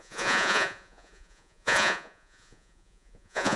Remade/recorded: remade